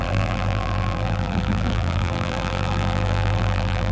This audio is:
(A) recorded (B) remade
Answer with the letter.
B